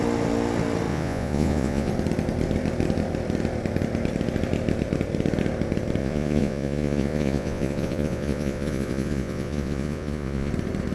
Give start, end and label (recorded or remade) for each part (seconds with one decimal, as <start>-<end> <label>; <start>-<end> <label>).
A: 0.0-0.9 recorded; 0.9-1.9 remade; 1.9-6.0 recorded; 6.0-10.5 remade; 10.5-10.9 recorded

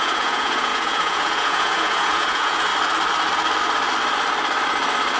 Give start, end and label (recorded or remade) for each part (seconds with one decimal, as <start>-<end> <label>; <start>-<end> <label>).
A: 0.0-2.7 remade; 2.7-5.2 recorded

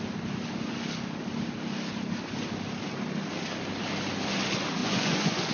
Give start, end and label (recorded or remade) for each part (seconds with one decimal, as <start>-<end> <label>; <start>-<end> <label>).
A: 0.0-4.8 recorded; 4.8-5.5 remade

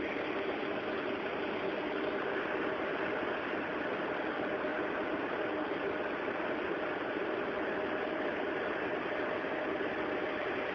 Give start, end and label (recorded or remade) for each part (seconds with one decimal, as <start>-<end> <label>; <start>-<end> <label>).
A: 0.0-10.7 recorded